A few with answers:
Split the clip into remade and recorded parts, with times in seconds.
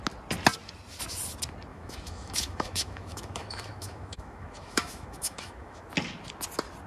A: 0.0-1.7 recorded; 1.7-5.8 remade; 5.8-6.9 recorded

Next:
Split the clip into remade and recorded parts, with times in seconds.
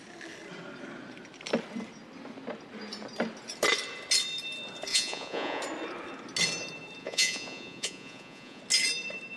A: 0.0-4.9 recorded; 4.9-5.6 remade; 5.6-7.0 recorded; 7.0-8.6 remade; 8.6-9.4 recorded